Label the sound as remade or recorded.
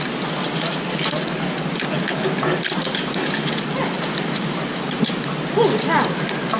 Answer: recorded